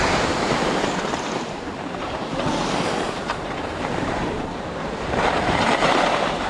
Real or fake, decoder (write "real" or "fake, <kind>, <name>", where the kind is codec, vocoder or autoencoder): fake, vocoder, BigVGAN v2